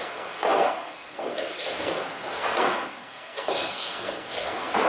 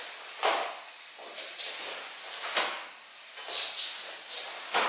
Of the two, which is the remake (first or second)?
first